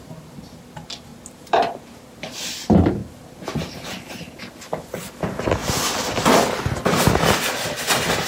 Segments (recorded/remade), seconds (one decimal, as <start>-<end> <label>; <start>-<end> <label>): 0.0-1.1 recorded; 1.1-2.2 remade; 2.2-8.3 recorded